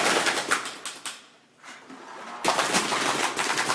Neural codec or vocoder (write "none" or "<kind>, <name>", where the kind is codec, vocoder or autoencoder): none